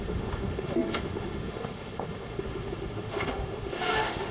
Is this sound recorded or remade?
remade